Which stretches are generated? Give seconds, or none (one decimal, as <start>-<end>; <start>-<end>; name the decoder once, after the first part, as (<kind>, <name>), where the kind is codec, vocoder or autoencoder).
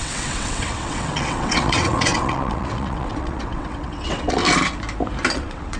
0.0-4.4 (vocoder, WaveNeXt); 5.3-5.8